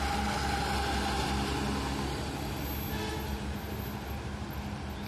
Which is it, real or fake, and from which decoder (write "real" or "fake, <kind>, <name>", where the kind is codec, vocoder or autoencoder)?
real